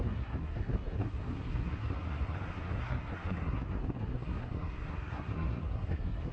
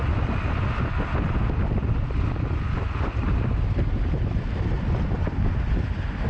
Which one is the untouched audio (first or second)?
second